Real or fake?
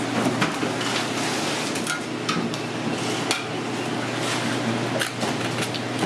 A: real